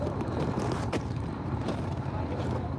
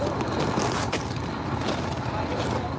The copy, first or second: first